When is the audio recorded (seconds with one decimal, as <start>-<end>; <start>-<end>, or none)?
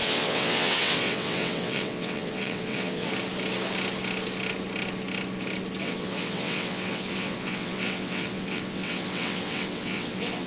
3.1-5.8